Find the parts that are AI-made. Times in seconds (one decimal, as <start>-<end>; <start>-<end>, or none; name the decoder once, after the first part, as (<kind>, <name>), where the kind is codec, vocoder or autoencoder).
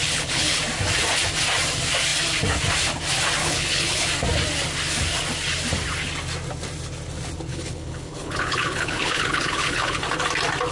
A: 0.0-0.6 (codec, HILCodec); 3.4-4.1; 7.5-10.0